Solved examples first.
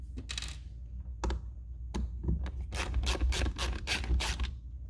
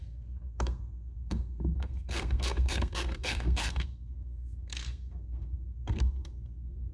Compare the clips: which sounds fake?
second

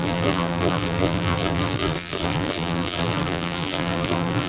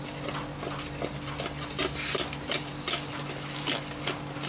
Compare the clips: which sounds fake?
first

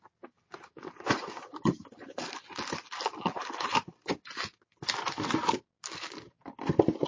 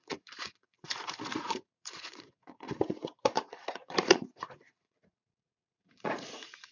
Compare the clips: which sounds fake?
second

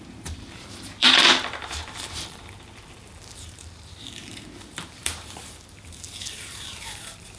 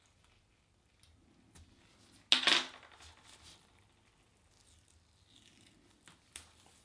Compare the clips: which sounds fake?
first